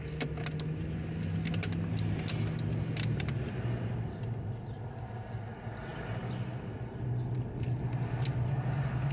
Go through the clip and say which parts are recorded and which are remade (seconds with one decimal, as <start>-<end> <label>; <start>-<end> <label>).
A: 0.0-9.1 recorded